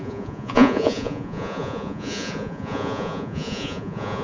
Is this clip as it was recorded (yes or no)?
no